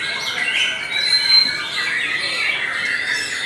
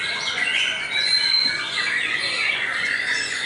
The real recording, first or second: first